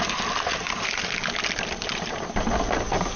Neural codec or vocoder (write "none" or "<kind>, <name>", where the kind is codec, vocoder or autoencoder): none